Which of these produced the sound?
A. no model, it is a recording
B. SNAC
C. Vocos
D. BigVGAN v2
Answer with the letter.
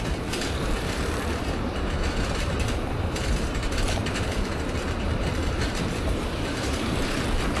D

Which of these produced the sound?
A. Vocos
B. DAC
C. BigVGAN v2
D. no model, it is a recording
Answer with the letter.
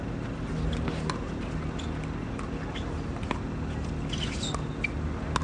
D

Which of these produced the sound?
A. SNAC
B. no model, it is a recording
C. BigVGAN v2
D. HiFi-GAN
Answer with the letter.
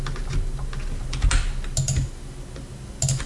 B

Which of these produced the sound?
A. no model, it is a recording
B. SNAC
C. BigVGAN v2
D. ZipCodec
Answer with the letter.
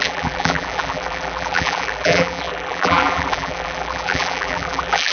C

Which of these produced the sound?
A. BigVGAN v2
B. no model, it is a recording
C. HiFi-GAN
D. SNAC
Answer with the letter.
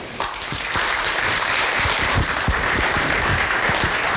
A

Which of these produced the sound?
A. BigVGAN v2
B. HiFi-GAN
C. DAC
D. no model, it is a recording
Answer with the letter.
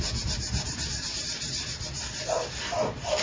D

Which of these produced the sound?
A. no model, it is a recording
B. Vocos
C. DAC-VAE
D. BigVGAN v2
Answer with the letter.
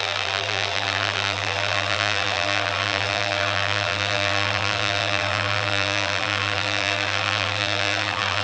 D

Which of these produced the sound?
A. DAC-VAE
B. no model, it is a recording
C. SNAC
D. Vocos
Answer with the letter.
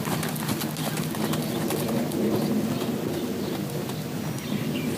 B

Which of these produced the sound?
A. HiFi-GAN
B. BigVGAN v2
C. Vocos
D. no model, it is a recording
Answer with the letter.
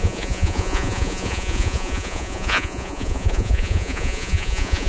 C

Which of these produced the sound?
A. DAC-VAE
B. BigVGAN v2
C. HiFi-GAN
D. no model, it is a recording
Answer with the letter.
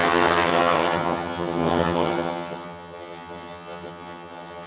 C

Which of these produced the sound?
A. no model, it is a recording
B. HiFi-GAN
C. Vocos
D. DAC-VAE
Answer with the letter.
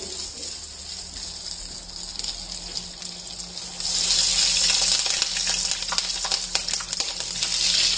A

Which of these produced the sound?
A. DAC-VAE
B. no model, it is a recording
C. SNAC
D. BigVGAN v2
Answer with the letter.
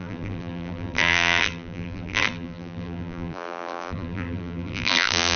D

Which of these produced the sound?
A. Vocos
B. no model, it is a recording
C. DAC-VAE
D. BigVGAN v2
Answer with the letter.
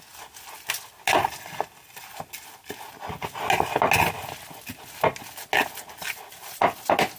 B